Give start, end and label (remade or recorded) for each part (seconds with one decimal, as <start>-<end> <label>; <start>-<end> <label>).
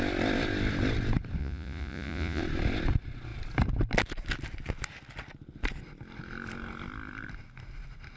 0.0-1.4 recorded; 1.4-2.4 remade; 2.4-8.2 recorded